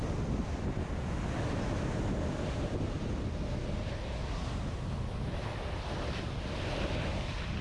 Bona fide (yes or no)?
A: yes